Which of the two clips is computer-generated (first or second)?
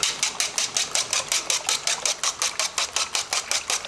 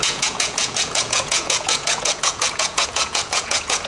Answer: second